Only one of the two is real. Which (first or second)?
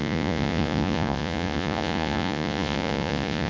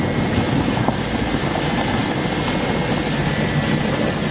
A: second